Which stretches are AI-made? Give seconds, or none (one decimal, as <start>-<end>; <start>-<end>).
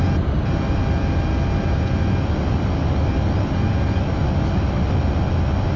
none